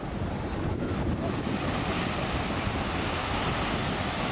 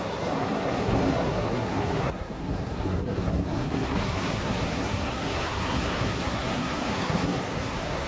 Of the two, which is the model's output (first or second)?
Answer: second